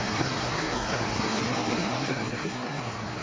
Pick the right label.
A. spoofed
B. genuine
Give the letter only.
A